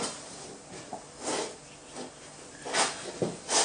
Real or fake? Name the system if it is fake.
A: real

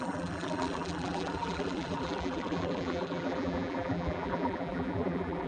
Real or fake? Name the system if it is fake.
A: fake, vocoder, BigVGAN v2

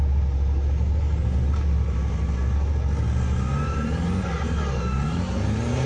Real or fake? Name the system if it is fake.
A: real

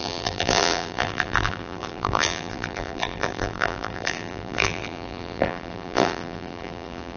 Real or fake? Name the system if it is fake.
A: fake, vocoder, BigVGAN v2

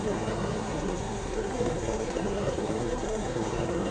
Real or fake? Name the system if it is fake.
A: fake, codec, SNAC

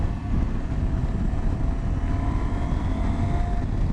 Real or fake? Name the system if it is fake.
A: real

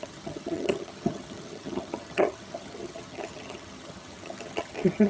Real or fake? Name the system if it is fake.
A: fake, vocoder, HiFi-GAN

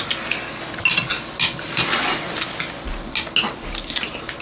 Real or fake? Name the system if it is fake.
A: real